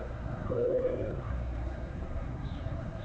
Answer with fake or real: fake